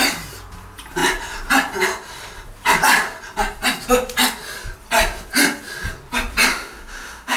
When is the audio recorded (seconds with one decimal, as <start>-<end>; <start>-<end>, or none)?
0.0-6.5